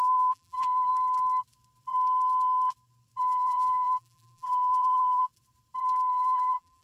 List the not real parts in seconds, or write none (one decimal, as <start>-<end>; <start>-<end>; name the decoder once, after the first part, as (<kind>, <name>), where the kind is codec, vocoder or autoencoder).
0.0-0.9 (vocoder, BigVGAN v2); 3.2-5.3; 6.1-6.8